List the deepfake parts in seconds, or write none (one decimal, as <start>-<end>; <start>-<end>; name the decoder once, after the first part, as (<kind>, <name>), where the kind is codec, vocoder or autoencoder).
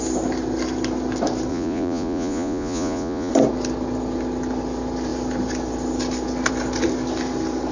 1.5-3.3 (vocoder, Vocos)